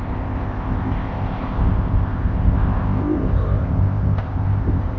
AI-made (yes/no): yes